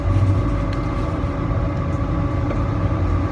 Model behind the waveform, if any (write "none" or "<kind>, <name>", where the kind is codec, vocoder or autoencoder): none